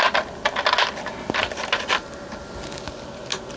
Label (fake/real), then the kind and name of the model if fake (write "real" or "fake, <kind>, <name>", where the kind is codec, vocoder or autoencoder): real